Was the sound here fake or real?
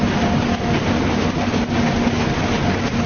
real